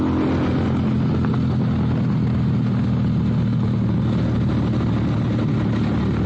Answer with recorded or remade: recorded